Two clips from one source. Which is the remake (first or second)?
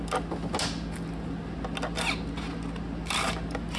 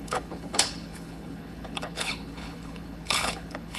second